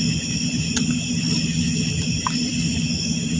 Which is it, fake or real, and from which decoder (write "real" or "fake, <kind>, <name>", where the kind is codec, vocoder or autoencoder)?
real